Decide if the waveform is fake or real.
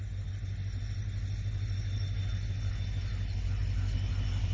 real